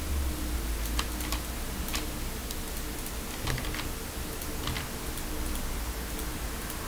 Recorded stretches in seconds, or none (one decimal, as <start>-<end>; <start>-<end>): 0.0-6.9